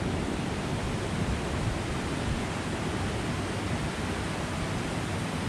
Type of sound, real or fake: real